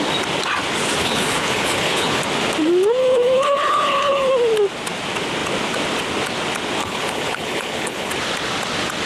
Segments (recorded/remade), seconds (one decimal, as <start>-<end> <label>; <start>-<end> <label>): 0.0-1.0 recorded; 1.0-2.2 remade; 2.2-3.0 recorded; 3.0-4.3 remade; 4.3-6.8 recorded; 6.8-8.1 remade; 8.1-9.1 recorded